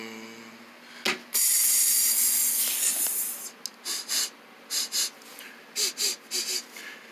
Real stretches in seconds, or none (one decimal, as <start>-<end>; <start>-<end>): 0.0-7.1